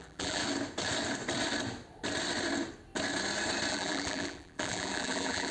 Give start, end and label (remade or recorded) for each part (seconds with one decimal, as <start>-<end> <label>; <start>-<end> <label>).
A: 0.0-0.4 remade; 0.4-3.7 recorded; 3.7-5.5 remade